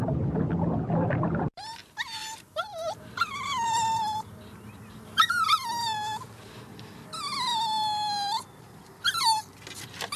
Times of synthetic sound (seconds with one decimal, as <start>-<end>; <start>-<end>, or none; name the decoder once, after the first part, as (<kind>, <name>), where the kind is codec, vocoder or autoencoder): 2.2-5.4 (vocoder, BigVGAN v2)